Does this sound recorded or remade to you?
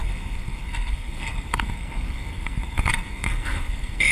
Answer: remade